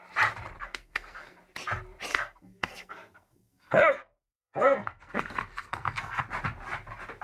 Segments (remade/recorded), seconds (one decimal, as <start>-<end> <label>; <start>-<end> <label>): 0.0-0.6 recorded; 0.6-1.4 remade; 1.4-2.1 recorded; 2.1-6.2 remade; 6.2-7.2 recorded